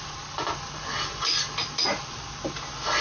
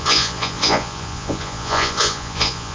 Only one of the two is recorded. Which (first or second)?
first